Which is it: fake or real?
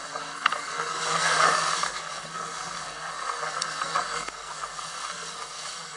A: fake